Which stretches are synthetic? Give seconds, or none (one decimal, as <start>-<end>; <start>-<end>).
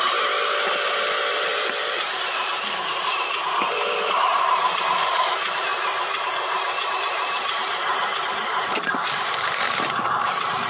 0.0-10.7